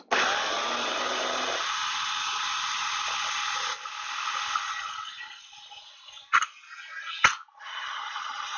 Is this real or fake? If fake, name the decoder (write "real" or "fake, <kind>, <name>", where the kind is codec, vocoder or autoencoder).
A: real